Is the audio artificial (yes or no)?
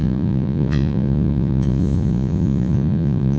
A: yes